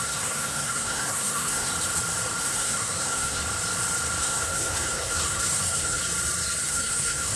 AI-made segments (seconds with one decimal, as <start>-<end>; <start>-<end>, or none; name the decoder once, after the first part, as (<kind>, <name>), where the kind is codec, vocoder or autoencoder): 0.0-1.7 (codec, SNAC); 2.4-3.4; 4.2-6.0; 6.6-7.4